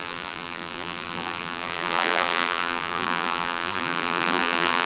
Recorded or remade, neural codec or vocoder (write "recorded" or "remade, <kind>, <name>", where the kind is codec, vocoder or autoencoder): remade, vocoder, BigVGAN v2